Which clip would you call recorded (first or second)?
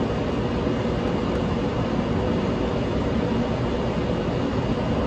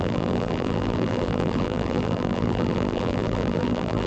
first